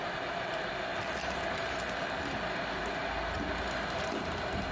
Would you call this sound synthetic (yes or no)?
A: no